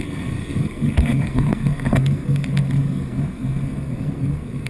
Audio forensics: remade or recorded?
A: remade